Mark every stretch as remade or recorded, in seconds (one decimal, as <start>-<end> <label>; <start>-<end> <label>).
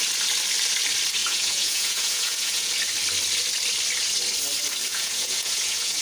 0.0-1.2 recorded; 1.2-2.7 remade; 2.7-4.9 recorded; 4.9-6.0 remade